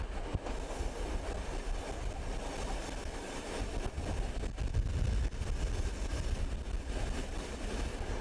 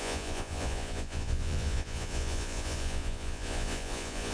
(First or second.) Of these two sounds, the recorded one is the first